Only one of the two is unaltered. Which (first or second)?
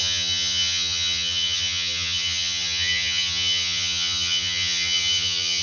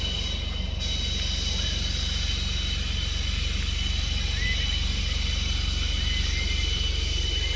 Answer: second